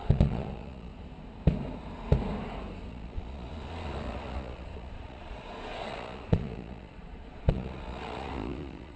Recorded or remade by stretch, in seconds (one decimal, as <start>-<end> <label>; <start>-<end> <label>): 0.0-0.9 remade; 0.9-2.9 recorded; 2.9-9.0 remade